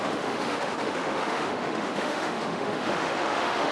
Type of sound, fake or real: fake